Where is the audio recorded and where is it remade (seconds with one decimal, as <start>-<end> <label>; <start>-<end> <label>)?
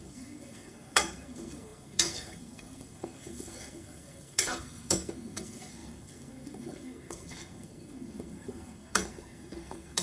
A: 0.0-10.0 remade